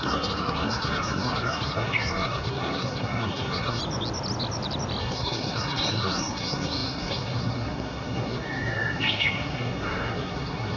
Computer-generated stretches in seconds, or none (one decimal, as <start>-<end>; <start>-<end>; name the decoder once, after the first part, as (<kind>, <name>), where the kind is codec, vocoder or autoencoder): 0.0-3.8 (codec, SNAC); 5.0-10.8